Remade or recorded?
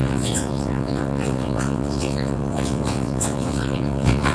remade